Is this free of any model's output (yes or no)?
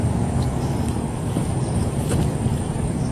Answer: no